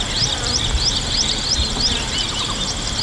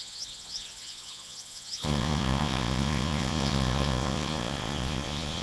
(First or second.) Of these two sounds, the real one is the first